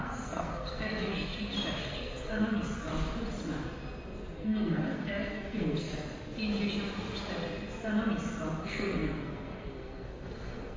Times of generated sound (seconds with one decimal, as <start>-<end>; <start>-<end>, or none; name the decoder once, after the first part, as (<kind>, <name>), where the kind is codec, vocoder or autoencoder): 0.0-1.3 (codec, SNAC); 1.8-2.9; 4.4-5.9; 8.6-10.8